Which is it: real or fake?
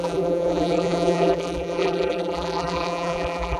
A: fake